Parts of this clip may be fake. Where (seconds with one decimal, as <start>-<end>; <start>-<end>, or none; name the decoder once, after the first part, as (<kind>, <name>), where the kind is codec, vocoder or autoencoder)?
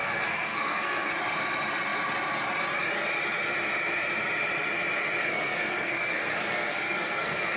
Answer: 0.0-1.1 (codec, SNAC); 5.2-7.6